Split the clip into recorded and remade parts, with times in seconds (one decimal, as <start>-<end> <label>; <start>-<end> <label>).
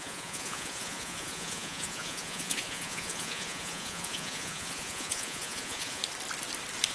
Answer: 0.0-6.0 remade; 6.0-6.9 recorded